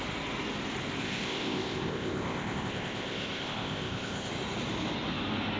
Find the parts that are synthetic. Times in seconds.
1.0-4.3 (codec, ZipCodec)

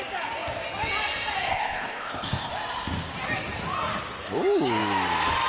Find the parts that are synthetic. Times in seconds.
1.5-2.5 (codec, ZipCodec)

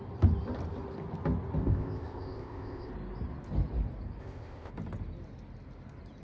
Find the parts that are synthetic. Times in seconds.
1.6-2.9 (codec, ZipCodec); 4.2-4.7

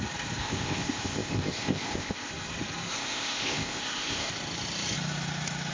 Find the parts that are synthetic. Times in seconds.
0.4-2.3 (codec, ZipCodec); 2.9-4.3

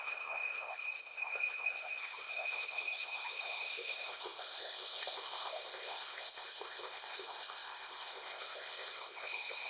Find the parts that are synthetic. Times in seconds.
0.0-9.7 (codec, ZipCodec)

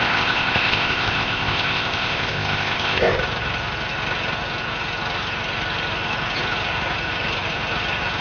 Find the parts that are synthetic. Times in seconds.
0.0-3.2 (codec, ZipCodec)